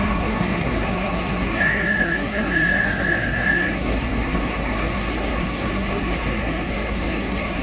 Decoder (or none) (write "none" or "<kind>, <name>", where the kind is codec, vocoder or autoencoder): codec, SNAC